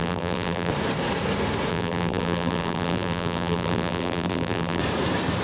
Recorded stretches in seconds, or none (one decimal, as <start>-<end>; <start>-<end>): 0.7-1.7; 4.8-5.4